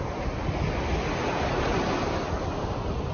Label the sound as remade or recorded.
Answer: recorded